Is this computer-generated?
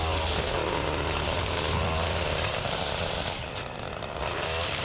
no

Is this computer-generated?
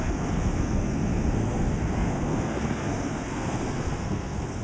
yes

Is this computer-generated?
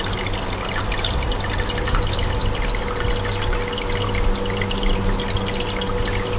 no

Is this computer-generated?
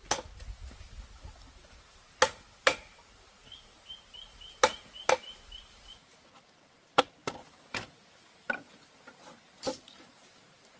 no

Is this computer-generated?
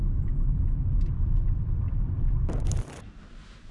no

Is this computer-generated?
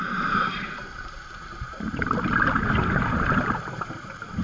yes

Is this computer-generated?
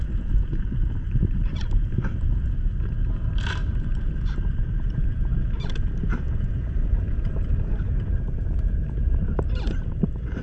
yes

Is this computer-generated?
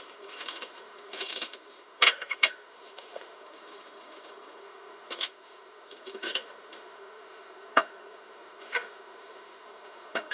yes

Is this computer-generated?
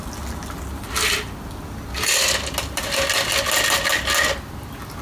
no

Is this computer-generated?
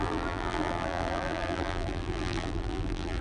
yes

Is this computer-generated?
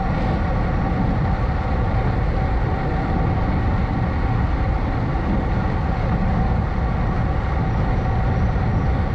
no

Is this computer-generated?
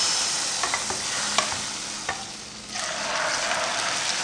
no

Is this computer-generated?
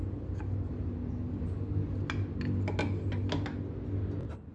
no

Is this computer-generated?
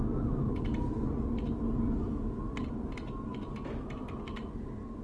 no